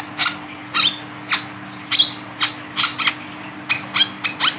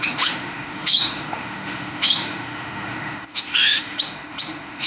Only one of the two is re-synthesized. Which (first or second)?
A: second